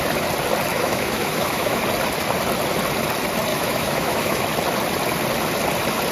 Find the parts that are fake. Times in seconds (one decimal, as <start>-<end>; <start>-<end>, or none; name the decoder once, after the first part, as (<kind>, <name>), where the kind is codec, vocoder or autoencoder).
0.7-1.8 (autoencoder, DAC-VAE); 3.5-4.4